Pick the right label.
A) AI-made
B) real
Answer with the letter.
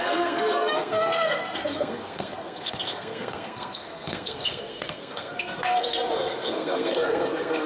A